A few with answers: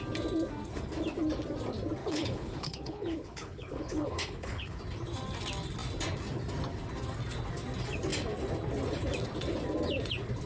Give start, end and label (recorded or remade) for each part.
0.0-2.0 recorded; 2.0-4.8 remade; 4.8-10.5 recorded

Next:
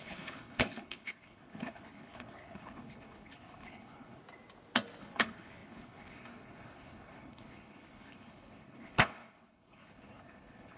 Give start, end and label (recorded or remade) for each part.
0.0-4.2 remade; 4.2-5.0 recorded; 5.0-10.8 remade